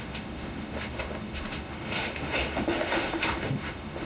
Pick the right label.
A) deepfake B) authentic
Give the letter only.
A